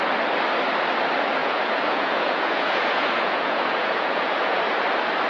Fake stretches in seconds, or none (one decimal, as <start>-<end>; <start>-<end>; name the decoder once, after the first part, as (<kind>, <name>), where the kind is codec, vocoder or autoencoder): 1.4-4.6 (vocoder, Vocos)